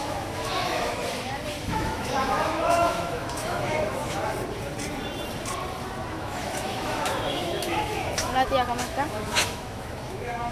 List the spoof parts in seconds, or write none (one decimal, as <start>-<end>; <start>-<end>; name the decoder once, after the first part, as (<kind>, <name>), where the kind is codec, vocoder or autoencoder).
0.0-1.0 (autoencoder, DAC-VAE); 1.6-4.2; 6.1-10.5

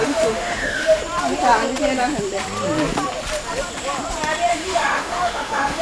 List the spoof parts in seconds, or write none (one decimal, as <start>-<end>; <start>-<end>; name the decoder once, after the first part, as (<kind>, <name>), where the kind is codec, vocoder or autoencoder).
0.0-1.0 (autoencoder, DAC-VAE); 4.5-5.8

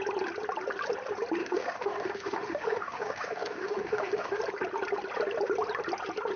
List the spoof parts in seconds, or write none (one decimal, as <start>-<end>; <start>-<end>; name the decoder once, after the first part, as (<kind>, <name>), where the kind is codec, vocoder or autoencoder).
1.4-4.4 (autoencoder, DAC-VAE)